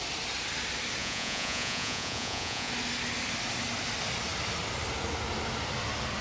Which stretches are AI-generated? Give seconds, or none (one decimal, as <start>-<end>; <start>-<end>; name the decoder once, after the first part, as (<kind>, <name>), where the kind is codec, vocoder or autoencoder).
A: 1.0-2.7 (vocoder, Vocos)